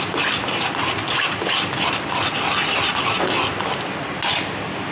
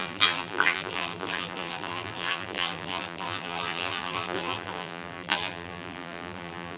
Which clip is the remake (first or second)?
second